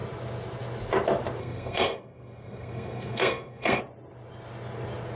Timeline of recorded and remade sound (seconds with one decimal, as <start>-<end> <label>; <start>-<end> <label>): 0.0-1.4 recorded; 1.4-3.8 remade; 3.8-5.2 recorded